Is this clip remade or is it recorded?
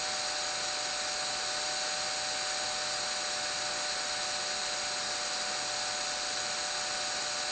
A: recorded